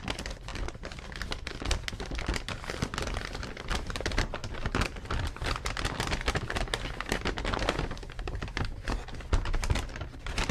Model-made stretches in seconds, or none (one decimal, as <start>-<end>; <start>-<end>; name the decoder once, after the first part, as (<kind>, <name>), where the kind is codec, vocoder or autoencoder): none